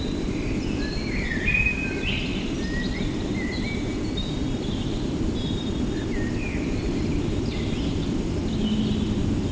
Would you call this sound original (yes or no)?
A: yes